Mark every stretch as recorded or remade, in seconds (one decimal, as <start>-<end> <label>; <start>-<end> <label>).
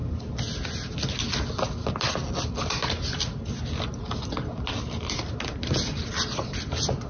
0.0-7.1 recorded